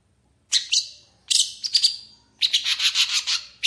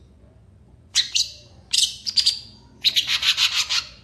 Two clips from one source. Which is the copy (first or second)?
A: second